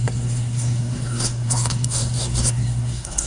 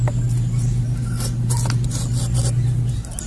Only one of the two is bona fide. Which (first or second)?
second